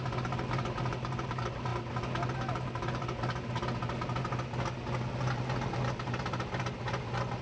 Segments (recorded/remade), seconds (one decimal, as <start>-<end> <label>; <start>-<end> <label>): 0.0-7.4 recorded